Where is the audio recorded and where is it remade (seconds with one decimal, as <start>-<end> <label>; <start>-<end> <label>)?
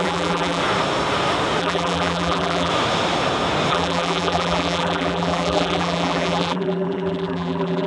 0.0-0.6 remade; 0.6-1.6 recorded; 1.6-2.7 remade; 2.7-3.7 recorded; 3.7-7.9 remade